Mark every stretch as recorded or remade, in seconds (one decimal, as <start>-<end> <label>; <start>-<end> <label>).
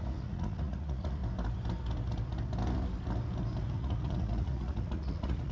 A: 0.0-1.2 remade; 1.2-3.6 recorded; 3.6-5.5 remade